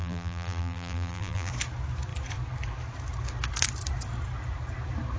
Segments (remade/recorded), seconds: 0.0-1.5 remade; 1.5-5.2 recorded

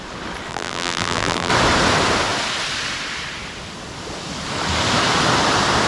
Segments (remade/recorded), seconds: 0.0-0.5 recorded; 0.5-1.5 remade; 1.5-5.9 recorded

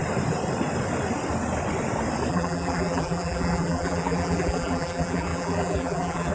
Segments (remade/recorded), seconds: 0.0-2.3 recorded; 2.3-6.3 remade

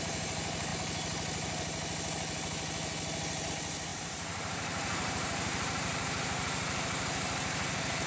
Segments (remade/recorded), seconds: 0.0-3.9 recorded; 3.9-8.1 remade

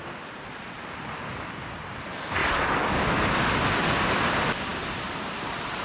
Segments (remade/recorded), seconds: 0.0-5.8 recorded

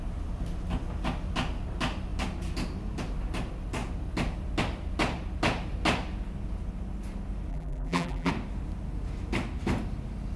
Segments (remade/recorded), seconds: 0.0-7.5 recorded; 7.5-8.3 remade; 8.3-10.4 recorded

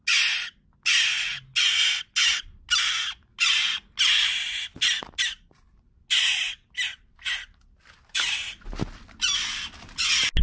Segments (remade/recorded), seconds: 0.0-10.4 recorded

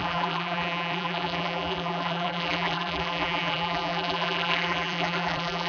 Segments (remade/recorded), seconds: 0.0-5.7 remade